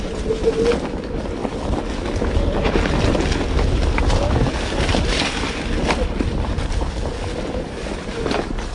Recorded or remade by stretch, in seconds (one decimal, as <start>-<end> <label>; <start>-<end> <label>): 0.0-8.7 recorded